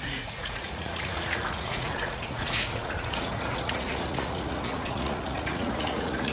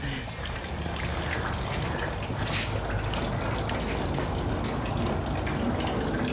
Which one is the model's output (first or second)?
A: first